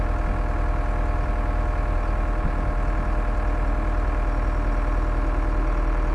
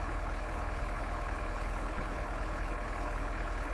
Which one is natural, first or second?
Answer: first